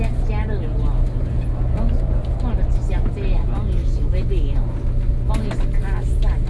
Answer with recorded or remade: recorded